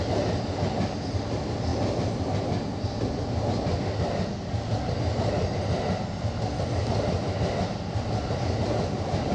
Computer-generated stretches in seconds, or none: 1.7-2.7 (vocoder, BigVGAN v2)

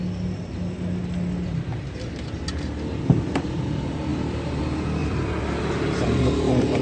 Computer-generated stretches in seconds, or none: 4.1-4.6 (vocoder, BigVGAN v2); 5.0-6.8

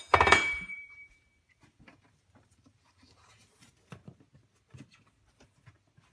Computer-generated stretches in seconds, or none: 0.0-3.7 (vocoder, BigVGAN v2)

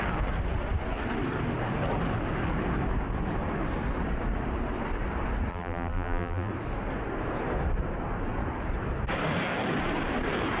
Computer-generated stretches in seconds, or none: 5.5-6.5 (vocoder, BigVGAN v2)

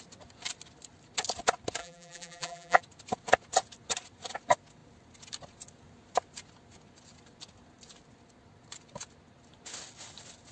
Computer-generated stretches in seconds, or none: 1.8-2.8 (vocoder, BigVGAN v2)

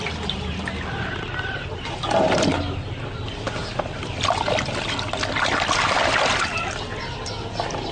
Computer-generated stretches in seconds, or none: 3.6-7.0 (vocoder, BigVGAN v2)

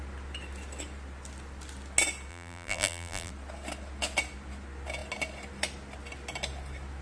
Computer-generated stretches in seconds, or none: 2.3-3.3 (vocoder, BigVGAN v2)